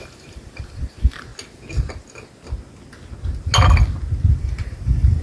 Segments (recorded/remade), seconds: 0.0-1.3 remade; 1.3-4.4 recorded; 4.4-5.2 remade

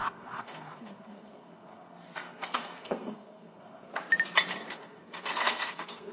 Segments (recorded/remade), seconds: 0.0-3.9 remade; 3.9-4.7 recorded; 4.7-6.1 remade

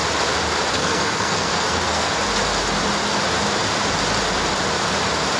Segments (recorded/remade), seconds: 0.0-0.7 recorded; 0.7-2.1 remade; 2.1-5.4 recorded

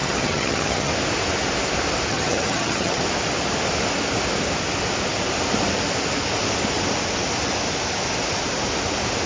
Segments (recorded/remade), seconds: 0.0-0.9 remade; 0.9-2.1 recorded; 2.1-3.0 remade; 3.0-9.3 recorded